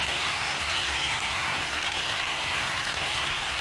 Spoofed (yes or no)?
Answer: yes